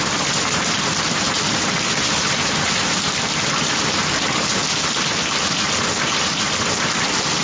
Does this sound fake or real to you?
real